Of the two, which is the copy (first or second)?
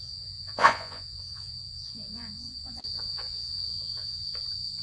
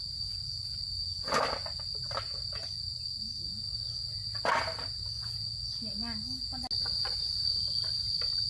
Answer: first